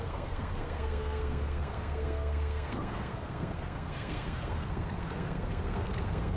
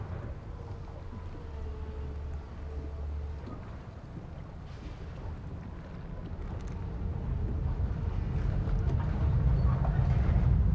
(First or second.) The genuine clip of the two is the second